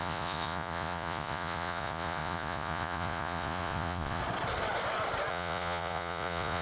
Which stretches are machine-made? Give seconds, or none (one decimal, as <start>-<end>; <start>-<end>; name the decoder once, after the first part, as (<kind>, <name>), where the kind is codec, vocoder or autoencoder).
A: 0.0-4.2 (vocoder, Vocos); 5.3-6.6